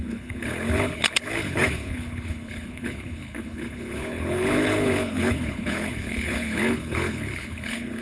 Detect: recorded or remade remade